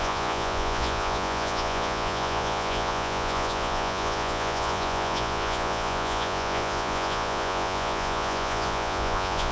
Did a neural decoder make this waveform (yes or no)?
yes